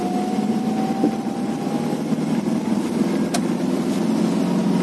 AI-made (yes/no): no